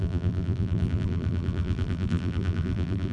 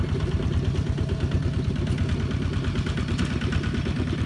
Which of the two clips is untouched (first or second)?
second